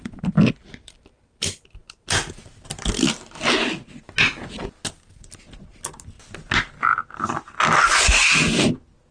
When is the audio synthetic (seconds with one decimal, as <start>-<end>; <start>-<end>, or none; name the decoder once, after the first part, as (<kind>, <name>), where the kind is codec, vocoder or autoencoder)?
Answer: none